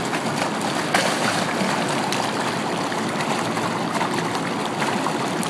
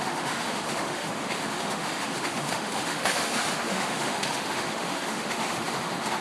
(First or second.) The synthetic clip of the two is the second